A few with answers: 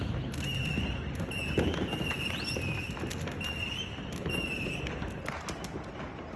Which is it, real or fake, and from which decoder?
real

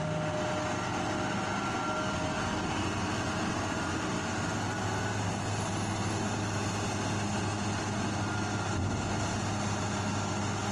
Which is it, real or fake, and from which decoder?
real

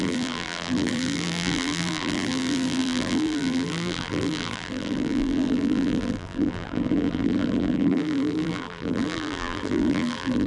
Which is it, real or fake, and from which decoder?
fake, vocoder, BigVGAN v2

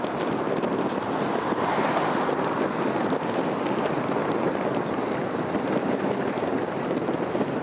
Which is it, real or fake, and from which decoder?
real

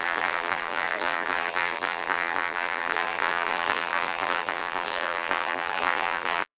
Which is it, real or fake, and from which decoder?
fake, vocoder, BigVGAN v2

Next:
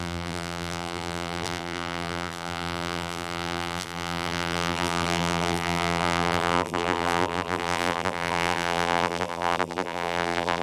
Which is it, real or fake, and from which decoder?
fake, vocoder, BigVGAN v2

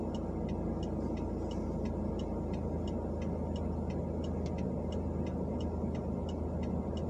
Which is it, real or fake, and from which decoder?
real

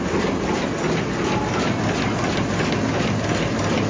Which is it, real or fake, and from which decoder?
real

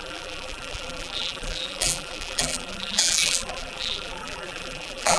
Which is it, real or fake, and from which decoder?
fake, vocoder, BigVGAN v2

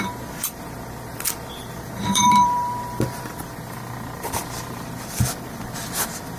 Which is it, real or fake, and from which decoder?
fake, vocoder, BigVGAN v2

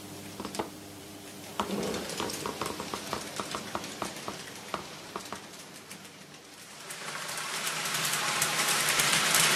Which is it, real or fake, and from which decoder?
fake, vocoder, BigVGAN v2